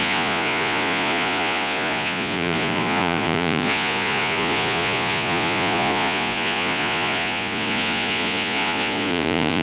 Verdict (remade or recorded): remade